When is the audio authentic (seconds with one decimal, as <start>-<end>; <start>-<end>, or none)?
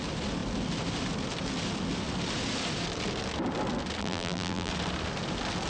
0.0-4.0; 4.7-5.7